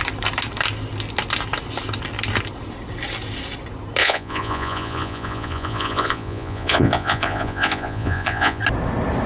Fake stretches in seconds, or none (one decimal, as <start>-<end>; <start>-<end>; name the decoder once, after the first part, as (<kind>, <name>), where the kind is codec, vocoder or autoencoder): 4.0-8.6 (vocoder, Vocos)

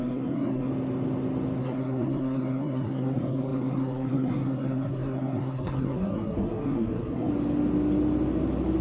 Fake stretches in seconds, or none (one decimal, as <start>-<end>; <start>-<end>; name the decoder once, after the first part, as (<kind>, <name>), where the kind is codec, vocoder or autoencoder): 0.0-0.7 (codec, SNAC); 1.6-7.3

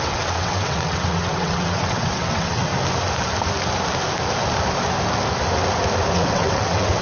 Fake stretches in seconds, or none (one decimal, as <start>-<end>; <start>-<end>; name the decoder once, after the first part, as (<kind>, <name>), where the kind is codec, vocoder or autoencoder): 0.0-2.7 (vocoder, WaveNeXt); 6.1-7.0

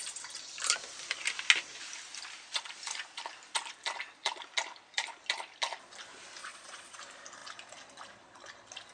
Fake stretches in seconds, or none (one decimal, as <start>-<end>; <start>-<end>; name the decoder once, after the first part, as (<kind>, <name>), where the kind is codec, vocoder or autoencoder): 6.4-7.0 (vocoder, Vocos)

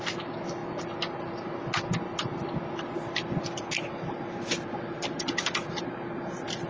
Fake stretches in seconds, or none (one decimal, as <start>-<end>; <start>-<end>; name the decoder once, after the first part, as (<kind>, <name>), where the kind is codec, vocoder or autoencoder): none

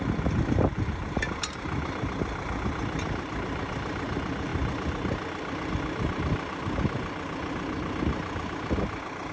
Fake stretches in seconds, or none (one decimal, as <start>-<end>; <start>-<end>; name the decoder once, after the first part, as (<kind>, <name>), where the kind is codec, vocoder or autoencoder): none

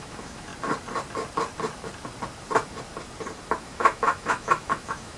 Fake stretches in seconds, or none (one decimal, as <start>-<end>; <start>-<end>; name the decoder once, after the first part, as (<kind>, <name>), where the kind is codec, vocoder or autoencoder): 0.0-0.5 (autoencoder, DAC-VAE); 3.6-5.2